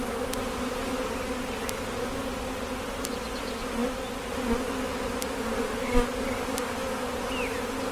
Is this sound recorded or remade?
recorded